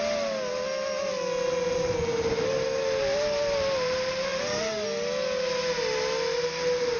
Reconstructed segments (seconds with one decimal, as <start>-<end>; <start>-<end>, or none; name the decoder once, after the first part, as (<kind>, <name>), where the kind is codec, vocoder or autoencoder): none